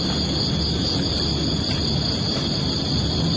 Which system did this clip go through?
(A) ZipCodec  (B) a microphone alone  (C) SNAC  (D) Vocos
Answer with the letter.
B